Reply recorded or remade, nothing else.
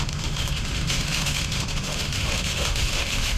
remade